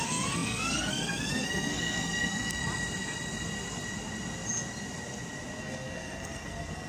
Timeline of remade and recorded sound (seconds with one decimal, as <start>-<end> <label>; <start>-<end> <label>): 0.0-2.6 remade; 2.6-5.6 recorded; 5.6-6.9 remade